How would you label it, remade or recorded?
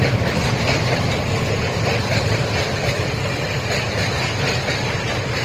recorded